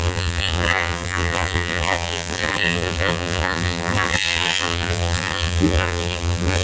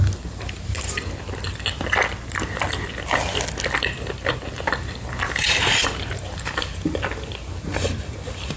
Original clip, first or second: second